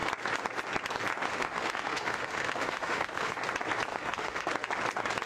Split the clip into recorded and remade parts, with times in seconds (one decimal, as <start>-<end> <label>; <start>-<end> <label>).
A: 0.0-1.3 recorded; 1.3-3.4 remade; 3.4-3.9 recorded; 3.9-4.5 remade; 4.5-5.3 recorded